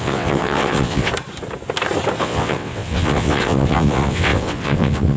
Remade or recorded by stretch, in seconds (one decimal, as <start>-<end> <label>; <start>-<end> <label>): 0.0-1.1 remade; 1.1-2.2 recorded; 2.2-5.2 remade